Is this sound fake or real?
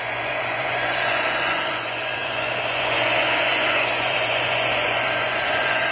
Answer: fake